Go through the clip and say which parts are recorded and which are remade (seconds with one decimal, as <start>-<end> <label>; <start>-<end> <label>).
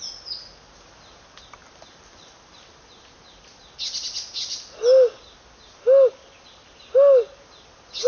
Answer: 0.0-8.1 recorded